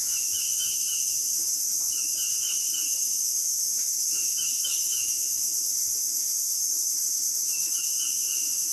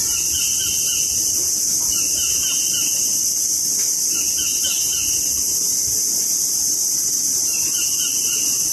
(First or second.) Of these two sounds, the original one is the second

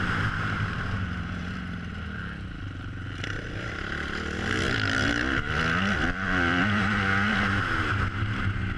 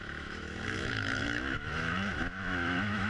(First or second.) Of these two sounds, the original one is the first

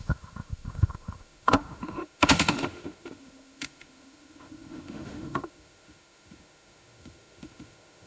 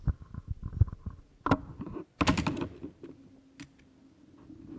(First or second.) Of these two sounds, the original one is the second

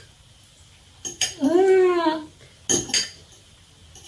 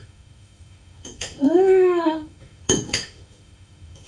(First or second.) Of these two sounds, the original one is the first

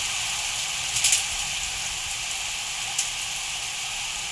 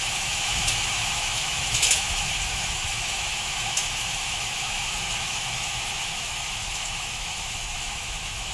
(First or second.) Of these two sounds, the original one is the first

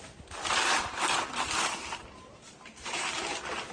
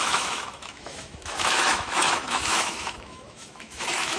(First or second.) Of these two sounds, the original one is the first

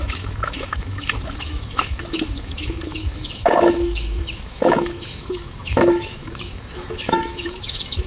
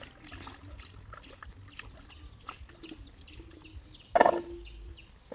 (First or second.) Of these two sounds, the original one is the second